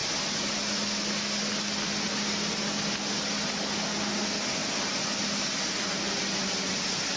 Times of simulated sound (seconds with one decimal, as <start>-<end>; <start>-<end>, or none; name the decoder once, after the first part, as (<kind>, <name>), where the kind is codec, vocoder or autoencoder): none